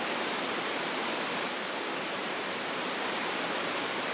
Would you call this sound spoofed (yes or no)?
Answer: yes